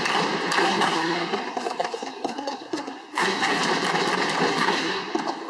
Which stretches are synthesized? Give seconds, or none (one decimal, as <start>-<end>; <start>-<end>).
0.6-3.6; 4.5-5.1